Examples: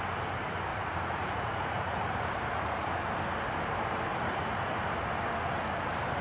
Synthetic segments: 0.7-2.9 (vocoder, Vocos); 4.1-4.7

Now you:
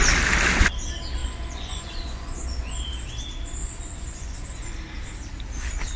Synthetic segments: 1.2-2.7 (vocoder, Vocos); 3.6-4.7

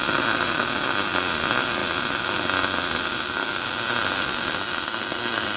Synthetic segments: none